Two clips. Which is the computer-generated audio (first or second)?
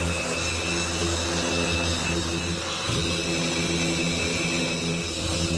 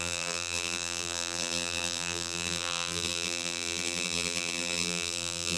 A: second